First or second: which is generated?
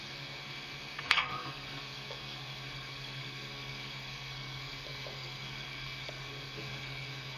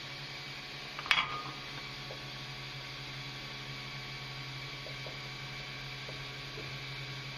first